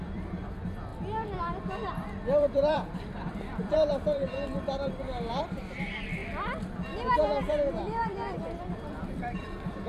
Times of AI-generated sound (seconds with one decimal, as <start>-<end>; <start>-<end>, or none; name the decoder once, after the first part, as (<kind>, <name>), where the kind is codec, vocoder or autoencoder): 0.0-6.2 (vocoder, BigVGAN v2); 7.2-9.9

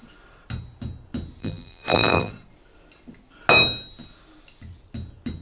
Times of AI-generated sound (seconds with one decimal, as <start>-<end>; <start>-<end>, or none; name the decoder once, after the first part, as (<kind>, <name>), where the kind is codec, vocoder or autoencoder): 1.4-2.3 (vocoder, BigVGAN v2)